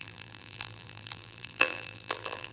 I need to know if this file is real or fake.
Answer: fake